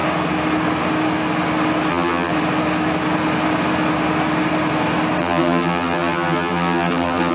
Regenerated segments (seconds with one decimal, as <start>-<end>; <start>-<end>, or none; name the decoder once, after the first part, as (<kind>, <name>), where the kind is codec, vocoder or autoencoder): 1.9-2.3 (vocoder, BigVGAN v2); 5.2-7.3